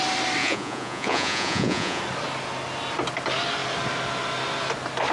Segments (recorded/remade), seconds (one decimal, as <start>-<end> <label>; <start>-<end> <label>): 0.0-0.4 recorded; 0.4-2.0 remade; 2.0-5.1 recorded